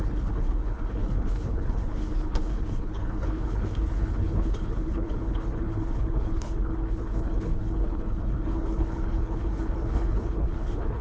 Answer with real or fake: fake